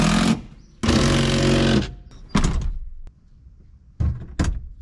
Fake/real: real